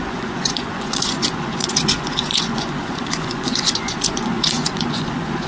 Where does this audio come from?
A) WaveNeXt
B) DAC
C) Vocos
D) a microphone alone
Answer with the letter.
C